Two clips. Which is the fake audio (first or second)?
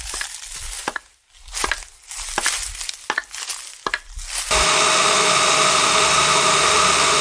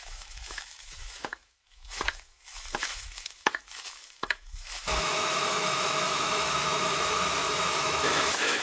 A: second